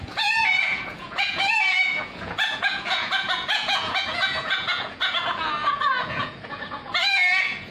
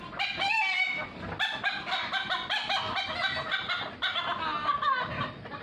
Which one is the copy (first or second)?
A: first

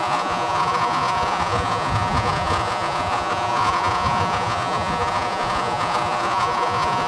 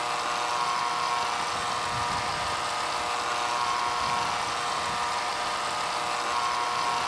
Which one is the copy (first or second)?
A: first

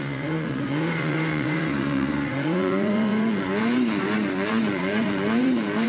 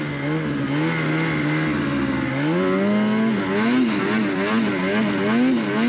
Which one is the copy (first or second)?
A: first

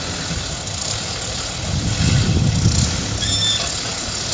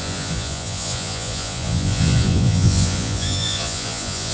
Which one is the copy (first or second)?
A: second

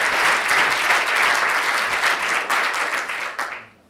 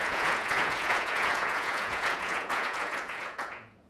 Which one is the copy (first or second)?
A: second